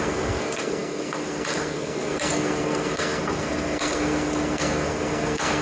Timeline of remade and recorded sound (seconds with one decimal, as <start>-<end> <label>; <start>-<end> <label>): 0.0-5.6 remade